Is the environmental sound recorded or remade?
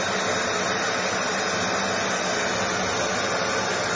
recorded